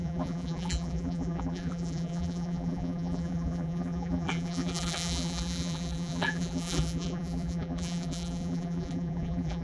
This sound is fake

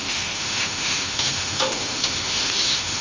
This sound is fake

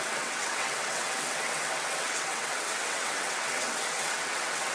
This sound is fake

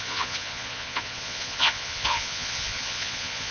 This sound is fake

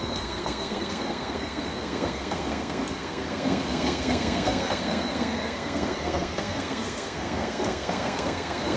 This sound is fake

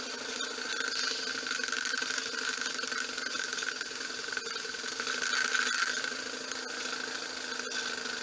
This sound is real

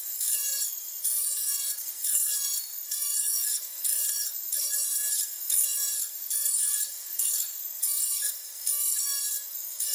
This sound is fake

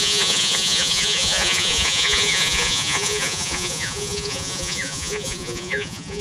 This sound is fake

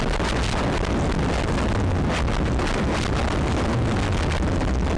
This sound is real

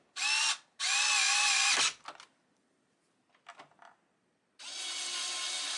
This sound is real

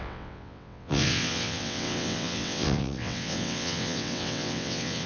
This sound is fake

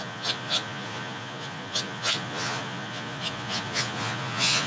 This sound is fake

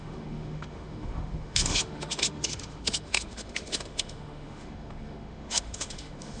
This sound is fake